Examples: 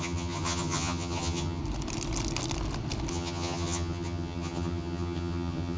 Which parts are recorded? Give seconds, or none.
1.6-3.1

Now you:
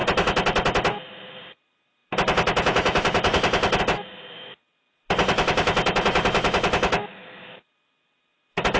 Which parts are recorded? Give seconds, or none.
0.0-8.8

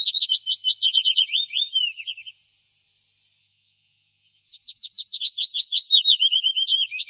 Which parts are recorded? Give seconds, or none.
0.0-1.7; 2.3-3.4